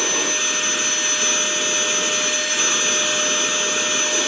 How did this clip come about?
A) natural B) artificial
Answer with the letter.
A